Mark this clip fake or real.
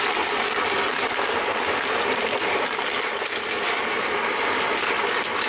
real